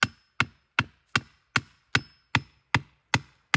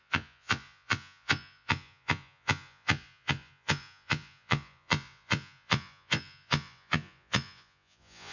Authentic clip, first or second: first